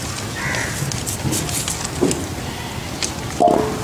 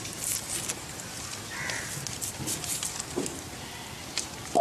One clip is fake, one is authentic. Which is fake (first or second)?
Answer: second